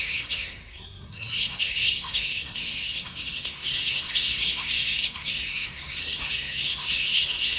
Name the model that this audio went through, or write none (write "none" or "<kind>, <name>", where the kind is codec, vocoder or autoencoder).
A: codec, SNAC